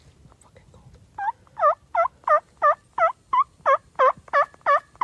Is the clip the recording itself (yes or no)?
yes